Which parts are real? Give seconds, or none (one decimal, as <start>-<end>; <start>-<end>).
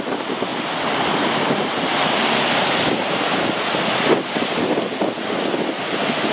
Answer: 0.0-6.3